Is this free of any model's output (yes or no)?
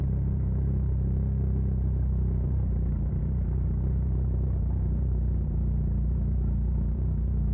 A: no